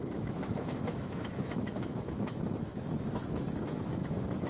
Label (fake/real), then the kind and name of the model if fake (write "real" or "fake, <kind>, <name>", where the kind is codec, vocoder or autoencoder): fake, autoencoder, DAC-VAE